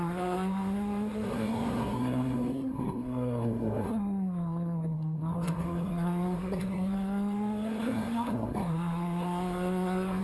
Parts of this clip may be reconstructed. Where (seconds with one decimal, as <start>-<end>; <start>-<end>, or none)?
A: 0.0-10.2